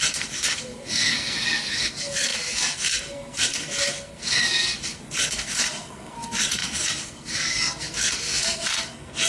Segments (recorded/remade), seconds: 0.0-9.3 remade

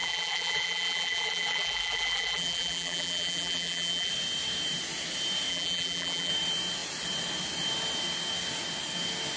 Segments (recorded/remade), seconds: 0.0-4.1 remade; 4.1-5.5 recorded; 5.5-6.3 remade; 6.3-9.4 recorded

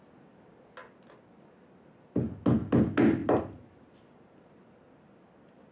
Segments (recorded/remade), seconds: 0.0-5.7 recorded

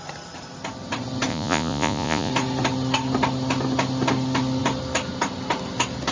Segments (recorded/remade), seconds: 0.0-1.3 recorded; 1.3-2.3 remade; 2.3-6.1 recorded

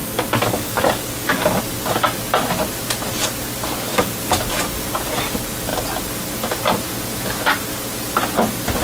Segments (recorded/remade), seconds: 0.0-1.6 remade; 1.6-3.9 recorded; 3.9-4.9 remade; 4.9-8.8 recorded

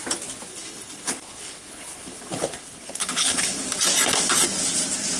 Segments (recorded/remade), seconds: 0.0-0.5 recorded; 0.5-3.6 remade; 3.6-5.2 recorded

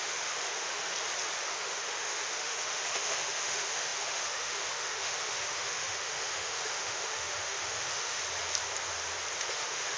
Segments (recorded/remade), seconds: 0.0-0.8 remade; 0.8-1.4 recorded; 1.4-8.2 remade; 8.2-9.5 recorded; 9.5-10.0 remade